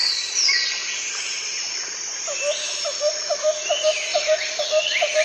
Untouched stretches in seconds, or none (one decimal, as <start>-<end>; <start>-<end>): 0.0-2.6; 3.6-5.2

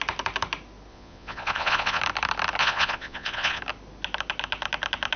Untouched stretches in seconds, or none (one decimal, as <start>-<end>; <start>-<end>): 0.0-0.9; 2.0-2.6; 3.6-5.2

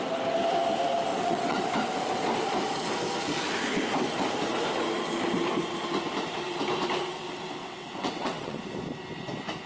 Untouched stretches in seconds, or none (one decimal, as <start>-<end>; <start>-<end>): 0.0-1.1; 1.6-7.6; 8.6-9.7

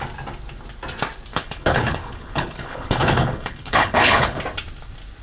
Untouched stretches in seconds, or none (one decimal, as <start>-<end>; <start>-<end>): 0.0-1.3; 4.4-5.2

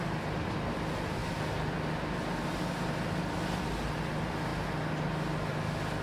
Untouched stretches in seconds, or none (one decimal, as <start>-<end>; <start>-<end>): 0.0-6.0

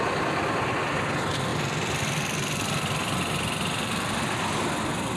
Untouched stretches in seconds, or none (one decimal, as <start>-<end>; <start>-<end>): 0.0-5.2